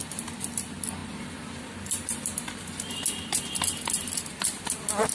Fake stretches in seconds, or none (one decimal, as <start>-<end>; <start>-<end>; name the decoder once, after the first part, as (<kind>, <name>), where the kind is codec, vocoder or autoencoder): none